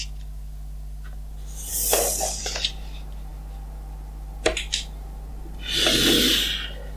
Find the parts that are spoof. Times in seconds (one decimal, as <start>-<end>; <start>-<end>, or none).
none